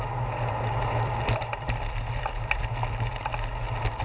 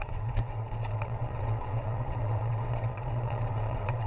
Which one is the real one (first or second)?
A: first